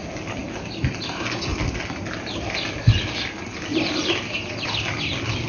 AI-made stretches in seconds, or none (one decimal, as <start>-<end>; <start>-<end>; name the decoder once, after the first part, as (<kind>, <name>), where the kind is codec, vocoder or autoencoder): none